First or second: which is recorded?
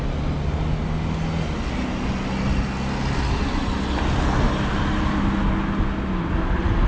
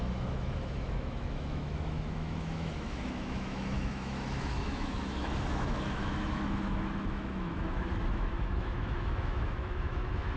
first